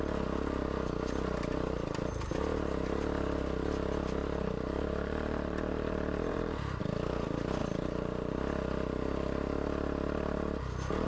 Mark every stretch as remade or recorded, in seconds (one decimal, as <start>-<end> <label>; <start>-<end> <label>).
0.0-4.2 recorded; 4.2-6.8 remade; 6.8-7.6 recorded; 7.6-8.3 remade; 8.3-11.1 recorded